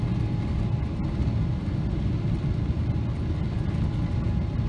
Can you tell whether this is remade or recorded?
recorded